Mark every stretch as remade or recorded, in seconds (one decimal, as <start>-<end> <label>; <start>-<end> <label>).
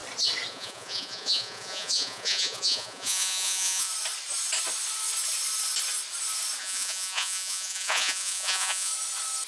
0.0-0.5 recorded; 0.5-3.9 remade; 3.9-6.6 recorded; 6.6-8.9 remade; 8.9-9.5 recorded